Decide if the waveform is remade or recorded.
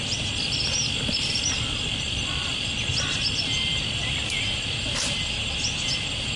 recorded